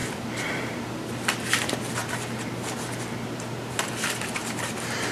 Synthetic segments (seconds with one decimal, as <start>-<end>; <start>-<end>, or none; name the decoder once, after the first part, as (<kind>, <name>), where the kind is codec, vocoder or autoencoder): 0.0-5.1 (vocoder, BigVGAN v2)